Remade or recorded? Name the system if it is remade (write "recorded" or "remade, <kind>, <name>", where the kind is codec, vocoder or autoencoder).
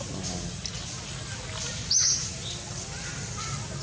recorded